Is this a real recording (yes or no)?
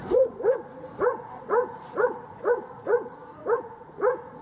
no